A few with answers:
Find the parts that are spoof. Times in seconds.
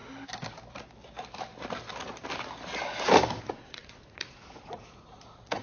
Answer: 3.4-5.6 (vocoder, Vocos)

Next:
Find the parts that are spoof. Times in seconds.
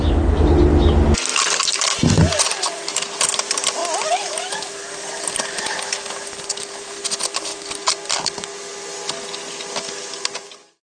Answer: none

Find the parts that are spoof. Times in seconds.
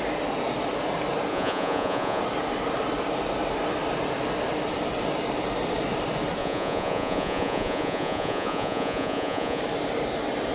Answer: 1.3-2.2 (vocoder, Vocos); 6.4-9.6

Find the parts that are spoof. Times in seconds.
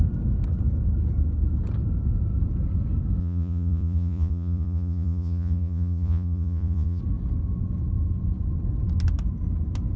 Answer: 3.2-7.0 (vocoder, Vocos)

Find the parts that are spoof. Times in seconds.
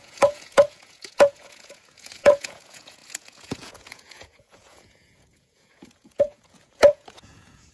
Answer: 0.0-7.7 (vocoder, Vocos)